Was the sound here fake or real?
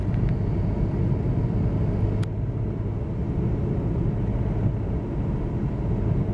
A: real